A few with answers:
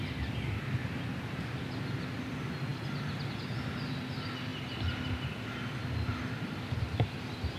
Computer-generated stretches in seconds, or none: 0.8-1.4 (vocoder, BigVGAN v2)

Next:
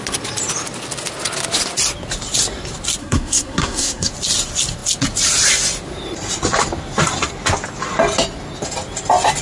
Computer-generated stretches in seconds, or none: 3.0-4.1 (codec, SNAC)

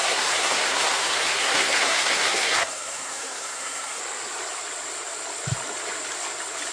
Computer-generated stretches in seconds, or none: 0.0-4.0 (codec, SNAC)

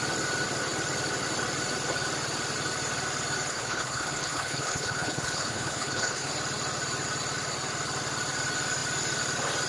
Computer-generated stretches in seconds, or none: 3.5-6.3 (codec, HILCodec)

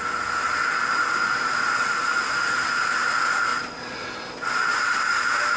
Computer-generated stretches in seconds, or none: none

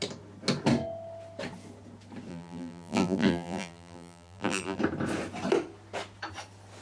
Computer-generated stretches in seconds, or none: 2.3-4.8 (vocoder, BigVGAN v2)

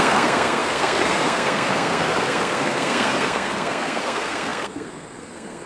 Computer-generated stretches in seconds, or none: 0.0-5.7 (codec, SNAC)

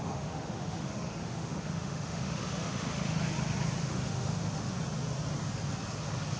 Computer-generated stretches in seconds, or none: 0.0-3.2 (autoencoder, DAC-VAE); 3.8-4.7